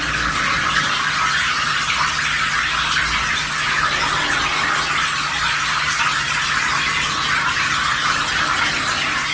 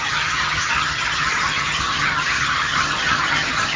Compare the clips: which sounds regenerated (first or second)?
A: second